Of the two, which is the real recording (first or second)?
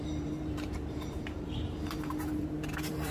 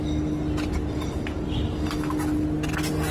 second